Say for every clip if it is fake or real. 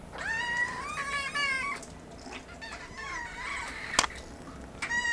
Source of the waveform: real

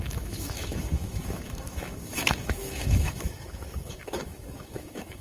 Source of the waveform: fake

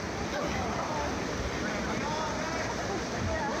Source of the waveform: real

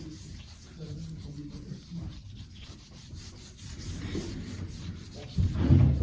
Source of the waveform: fake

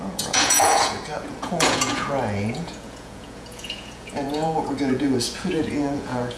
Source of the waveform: fake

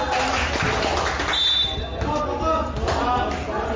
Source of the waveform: real